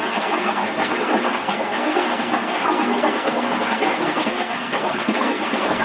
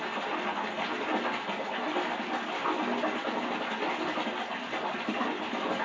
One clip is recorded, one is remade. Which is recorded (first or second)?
second